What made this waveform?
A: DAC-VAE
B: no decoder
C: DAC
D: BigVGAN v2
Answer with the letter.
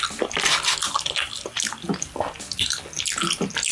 B